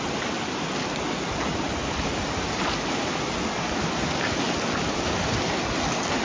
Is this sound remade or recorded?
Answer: recorded